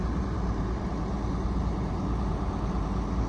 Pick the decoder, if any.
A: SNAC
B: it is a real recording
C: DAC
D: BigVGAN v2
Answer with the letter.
D